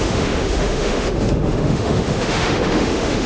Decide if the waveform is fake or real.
fake